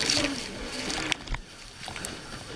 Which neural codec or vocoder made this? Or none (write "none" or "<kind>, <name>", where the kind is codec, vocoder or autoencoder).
vocoder, BigVGAN v2